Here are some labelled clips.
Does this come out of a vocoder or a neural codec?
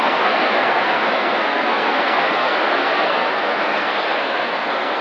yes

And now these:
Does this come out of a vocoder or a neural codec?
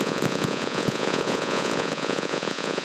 yes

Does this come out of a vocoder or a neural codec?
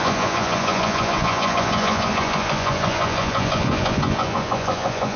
yes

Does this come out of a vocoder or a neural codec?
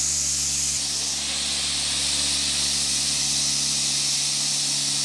no